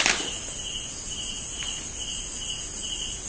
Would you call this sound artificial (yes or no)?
no